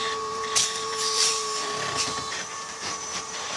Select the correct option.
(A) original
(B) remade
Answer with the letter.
B